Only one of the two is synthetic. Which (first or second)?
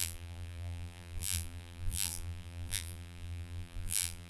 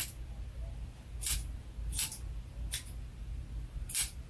first